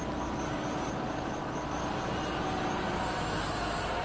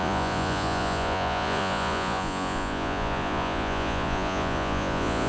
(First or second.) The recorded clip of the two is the first